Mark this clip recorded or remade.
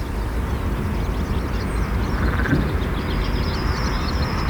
recorded